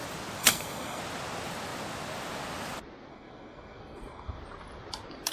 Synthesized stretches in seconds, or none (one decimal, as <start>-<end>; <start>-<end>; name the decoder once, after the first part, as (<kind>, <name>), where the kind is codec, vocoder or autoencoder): 0.4-1.0 (codec, SNAC); 3.1-4.4